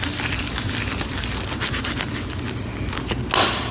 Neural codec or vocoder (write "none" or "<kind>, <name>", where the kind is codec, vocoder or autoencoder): none